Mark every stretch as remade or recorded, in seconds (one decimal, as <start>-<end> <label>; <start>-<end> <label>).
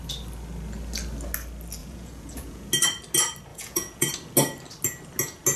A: 0.0-1.8 recorded; 1.8-2.7 remade; 2.7-3.5 recorded; 3.5-4.1 remade; 4.1-5.6 recorded